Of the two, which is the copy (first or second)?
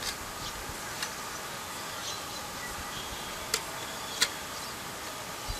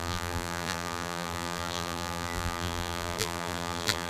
second